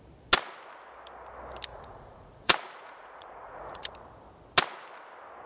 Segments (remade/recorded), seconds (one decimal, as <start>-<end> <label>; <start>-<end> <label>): 0.0-1.7 recorded; 1.7-3.9 remade; 3.9-5.5 recorded